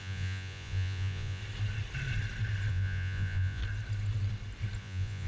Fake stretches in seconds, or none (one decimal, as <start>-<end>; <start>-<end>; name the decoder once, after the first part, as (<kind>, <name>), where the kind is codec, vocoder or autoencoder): 0.0-1.4 (vocoder, Vocos); 2.7-3.6; 4.8-5.3